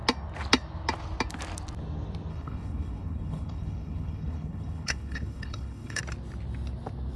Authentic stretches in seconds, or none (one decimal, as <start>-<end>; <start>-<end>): 0.0-2.3; 6.0-7.2